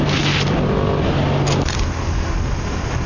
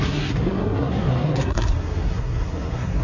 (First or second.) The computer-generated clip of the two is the second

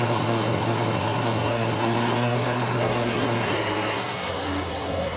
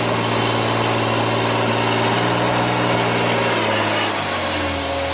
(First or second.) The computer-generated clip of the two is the first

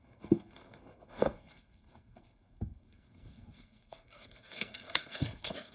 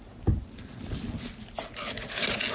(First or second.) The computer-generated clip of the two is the first